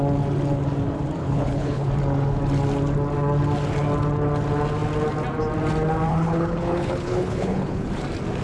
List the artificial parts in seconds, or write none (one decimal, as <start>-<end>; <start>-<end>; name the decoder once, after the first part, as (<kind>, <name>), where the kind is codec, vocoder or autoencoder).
1.2-1.9 (codec, HILCodec); 6.1-7.9